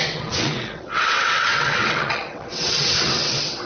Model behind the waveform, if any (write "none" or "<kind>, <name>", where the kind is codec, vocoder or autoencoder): vocoder, WaveNeXt